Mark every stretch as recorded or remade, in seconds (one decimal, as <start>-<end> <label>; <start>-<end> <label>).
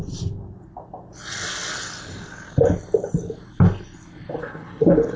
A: 0.0-4.4 recorded; 4.4-5.2 remade